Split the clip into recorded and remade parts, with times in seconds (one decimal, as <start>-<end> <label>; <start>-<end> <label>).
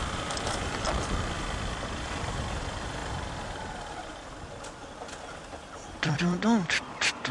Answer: 0.0-3.0 remade; 3.0-5.4 recorded; 5.4-7.3 remade